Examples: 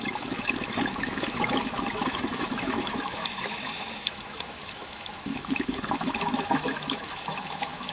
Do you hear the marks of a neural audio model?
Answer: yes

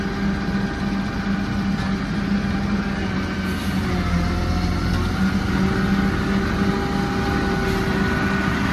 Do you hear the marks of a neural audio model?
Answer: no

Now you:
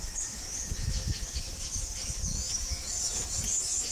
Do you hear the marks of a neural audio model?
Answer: yes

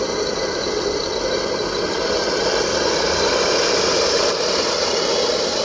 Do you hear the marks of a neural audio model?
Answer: no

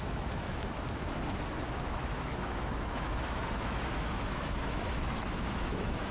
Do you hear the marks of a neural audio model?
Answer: yes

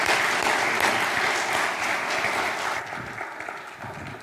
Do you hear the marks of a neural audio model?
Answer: no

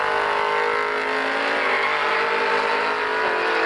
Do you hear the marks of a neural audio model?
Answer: no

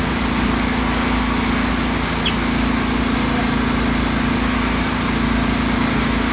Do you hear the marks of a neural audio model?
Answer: no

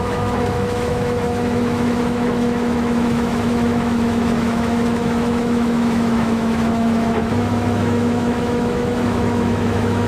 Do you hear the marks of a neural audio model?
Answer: yes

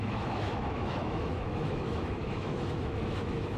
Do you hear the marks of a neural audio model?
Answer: yes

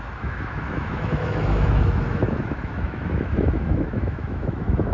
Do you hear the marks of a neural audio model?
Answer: yes